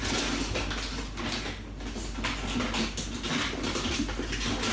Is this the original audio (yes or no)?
yes